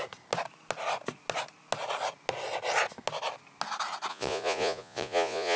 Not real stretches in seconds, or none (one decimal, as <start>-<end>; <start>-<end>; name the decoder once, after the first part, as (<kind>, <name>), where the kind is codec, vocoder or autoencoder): 4.1-5.6 (vocoder, Vocos)